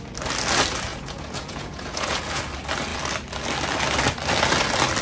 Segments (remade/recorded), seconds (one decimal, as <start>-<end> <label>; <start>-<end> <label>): 0.0-0.9 recorded; 0.9-2.4 remade; 2.4-5.0 recorded